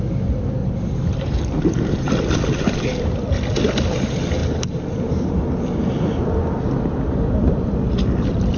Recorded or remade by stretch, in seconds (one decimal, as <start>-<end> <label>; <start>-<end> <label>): 0.0-0.6 recorded; 0.6-2.1 remade; 2.1-4.4 recorded; 4.4-5.5 remade; 5.5-8.6 recorded